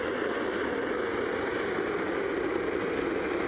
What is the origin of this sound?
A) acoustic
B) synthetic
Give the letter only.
A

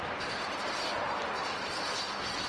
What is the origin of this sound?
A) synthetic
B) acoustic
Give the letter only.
B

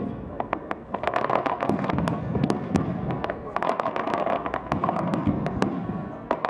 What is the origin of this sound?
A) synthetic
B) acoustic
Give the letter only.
A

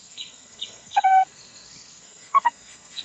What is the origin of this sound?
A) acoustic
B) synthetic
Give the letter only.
B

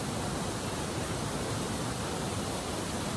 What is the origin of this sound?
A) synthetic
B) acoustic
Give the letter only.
B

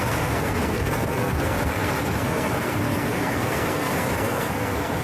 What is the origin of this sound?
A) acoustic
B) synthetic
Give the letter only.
B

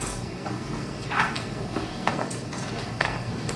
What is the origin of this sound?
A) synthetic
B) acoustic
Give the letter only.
A